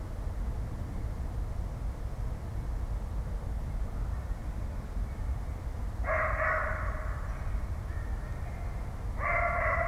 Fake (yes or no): no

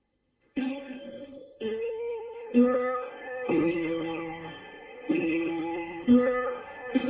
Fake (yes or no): yes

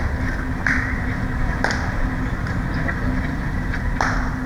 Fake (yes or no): no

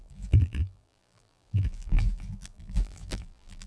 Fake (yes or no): yes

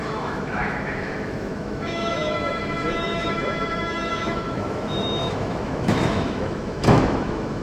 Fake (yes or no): yes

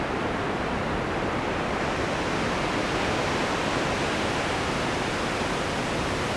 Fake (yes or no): no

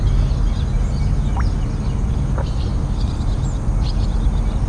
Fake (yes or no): no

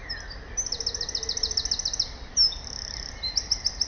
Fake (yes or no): no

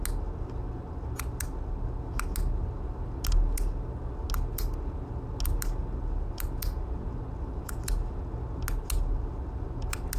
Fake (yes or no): no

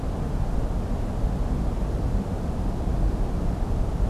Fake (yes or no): no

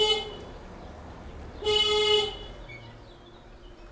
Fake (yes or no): no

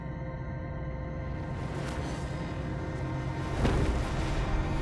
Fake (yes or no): no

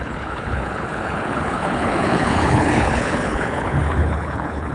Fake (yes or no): yes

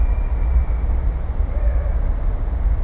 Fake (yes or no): no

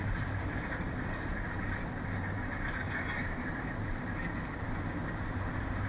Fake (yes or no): yes